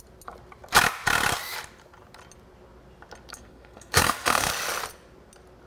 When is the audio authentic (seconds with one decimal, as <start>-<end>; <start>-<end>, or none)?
0.0-3.3; 4.5-5.7